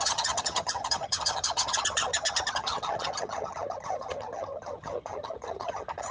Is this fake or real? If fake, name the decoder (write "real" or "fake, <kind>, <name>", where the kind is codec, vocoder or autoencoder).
fake, vocoder, HiFi-GAN